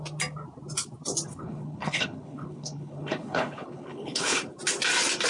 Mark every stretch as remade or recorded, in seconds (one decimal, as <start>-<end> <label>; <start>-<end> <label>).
0.0-1.3 recorded; 1.3-4.4 remade; 4.4-5.3 recorded